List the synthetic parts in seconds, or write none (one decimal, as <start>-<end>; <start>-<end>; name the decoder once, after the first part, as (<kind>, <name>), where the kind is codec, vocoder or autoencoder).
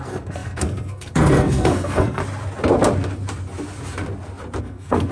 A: 0.0-2.2 (codec, SNAC); 4.6-5.1